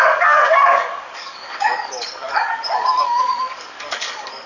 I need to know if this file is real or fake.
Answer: fake